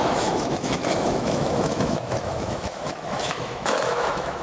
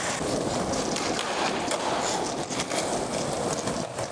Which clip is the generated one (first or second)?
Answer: first